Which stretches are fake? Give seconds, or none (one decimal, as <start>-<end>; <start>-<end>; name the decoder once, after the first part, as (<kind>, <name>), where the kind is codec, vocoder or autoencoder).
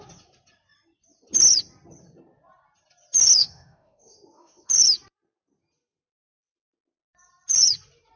3.4-4.7 (autoencoder, DAC-VAE)